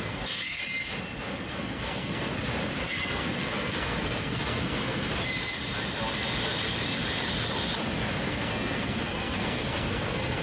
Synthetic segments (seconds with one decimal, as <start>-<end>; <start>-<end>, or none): 0.0-0.6; 1.5-2.3; 2.8-5.1; 8.2-10.4